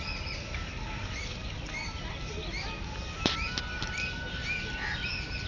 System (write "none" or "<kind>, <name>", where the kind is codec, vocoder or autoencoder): none